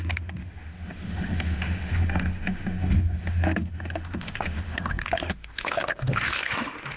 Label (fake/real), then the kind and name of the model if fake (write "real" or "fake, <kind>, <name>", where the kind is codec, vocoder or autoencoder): fake, autoencoder, DAC-VAE